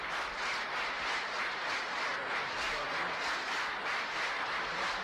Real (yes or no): yes